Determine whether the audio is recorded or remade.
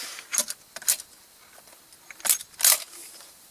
recorded